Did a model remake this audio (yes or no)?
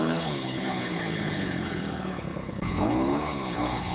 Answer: yes